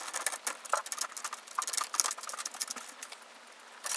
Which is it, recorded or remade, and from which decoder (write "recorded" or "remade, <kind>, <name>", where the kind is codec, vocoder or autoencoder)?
recorded